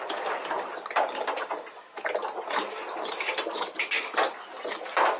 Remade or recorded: recorded